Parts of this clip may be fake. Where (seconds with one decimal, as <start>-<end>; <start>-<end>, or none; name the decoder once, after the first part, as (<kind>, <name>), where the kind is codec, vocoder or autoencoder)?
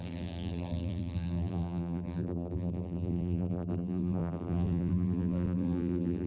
0.0-6.3 (vocoder, BigVGAN v2)